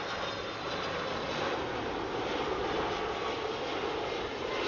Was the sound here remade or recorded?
recorded